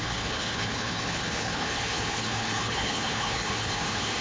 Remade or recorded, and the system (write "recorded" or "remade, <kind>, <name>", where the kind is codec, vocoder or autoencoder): remade, codec, HILCodec